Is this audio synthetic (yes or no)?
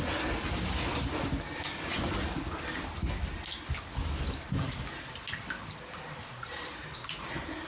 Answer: no